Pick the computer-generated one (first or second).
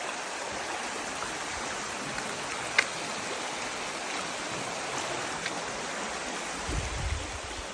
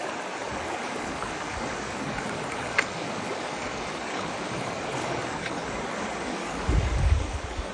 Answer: second